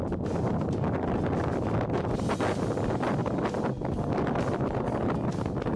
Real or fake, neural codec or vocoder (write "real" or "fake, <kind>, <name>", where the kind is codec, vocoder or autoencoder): real